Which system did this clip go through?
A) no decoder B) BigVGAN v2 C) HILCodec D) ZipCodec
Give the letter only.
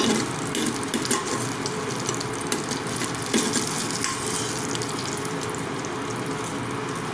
A